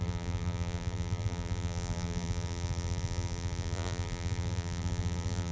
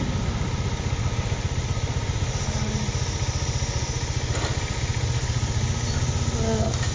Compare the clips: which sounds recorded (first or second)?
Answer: second